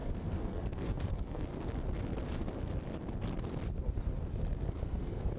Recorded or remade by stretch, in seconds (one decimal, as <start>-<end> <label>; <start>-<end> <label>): 0.0-1.5 remade; 1.5-4.7 recorded; 4.7-5.4 remade